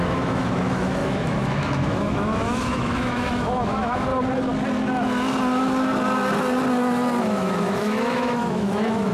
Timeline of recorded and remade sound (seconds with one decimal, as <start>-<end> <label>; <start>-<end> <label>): 0.0-4.1 remade; 4.1-7.2 recorded; 7.2-9.1 remade